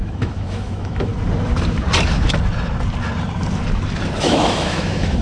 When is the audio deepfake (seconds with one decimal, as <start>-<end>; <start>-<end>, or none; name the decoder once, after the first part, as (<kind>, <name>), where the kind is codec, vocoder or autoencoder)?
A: 0.0-1.1 (autoencoder, DAC-VAE); 4.2-5.2